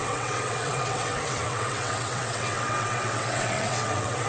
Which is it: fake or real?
fake